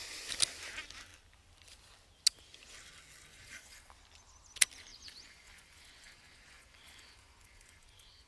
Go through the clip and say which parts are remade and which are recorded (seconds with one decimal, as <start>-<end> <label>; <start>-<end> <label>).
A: 0.0-3.3 recorded; 3.3-3.9 remade; 3.9-4.9 recorded; 4.9-8.3 remade